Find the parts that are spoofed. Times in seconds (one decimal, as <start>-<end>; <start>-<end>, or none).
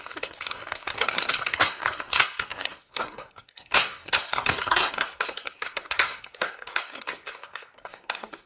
0.0-8.5